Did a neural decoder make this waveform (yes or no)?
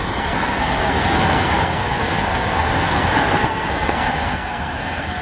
yes